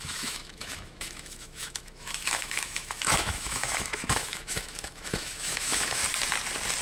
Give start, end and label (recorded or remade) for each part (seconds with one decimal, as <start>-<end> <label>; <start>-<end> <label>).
0.0-6.0 remade; 6.0-6.8 recorded